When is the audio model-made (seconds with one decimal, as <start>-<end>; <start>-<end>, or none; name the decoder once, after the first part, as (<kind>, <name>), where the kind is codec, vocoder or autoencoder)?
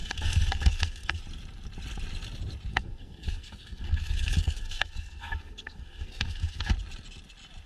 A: 0.0-1.2 (codec, SNAC); 2.7-6.7